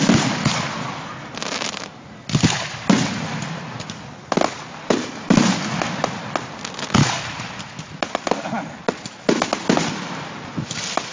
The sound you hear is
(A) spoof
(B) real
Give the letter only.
B